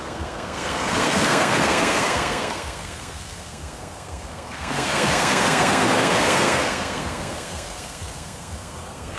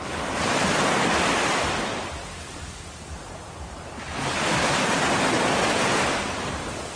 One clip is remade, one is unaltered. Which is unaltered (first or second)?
second